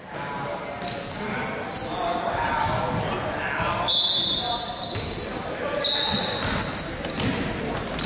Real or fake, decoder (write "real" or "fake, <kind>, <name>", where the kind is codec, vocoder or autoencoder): real